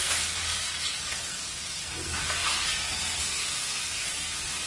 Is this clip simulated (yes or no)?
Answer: yes